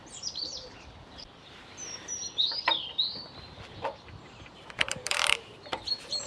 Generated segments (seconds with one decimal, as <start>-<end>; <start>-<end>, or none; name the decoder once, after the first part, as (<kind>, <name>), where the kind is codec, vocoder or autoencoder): 0.0-2.2 (vocoder, BigVGAN v2); 3.0-6.3